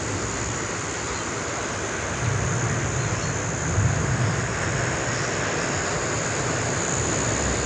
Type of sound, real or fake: real